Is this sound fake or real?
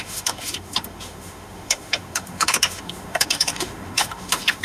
fake